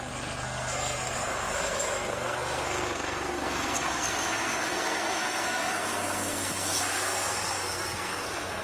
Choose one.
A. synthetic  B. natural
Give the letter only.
A